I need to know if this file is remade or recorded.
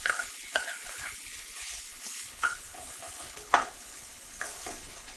remade